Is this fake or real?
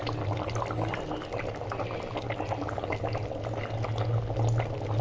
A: real